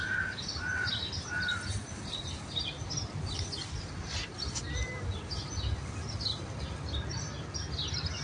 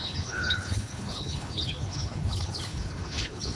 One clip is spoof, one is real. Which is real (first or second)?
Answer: first